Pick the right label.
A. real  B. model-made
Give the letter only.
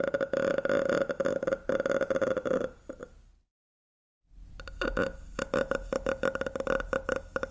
A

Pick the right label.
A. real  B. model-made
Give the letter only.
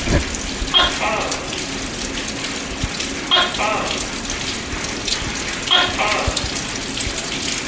A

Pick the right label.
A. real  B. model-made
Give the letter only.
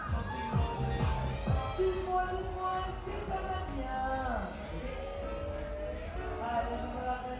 A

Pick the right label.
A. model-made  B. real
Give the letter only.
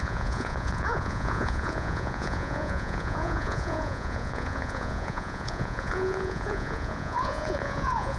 A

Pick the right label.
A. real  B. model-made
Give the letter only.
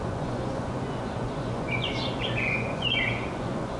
B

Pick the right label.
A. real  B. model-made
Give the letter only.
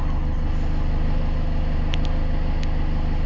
A